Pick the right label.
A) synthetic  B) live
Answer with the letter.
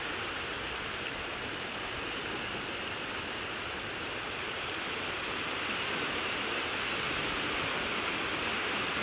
B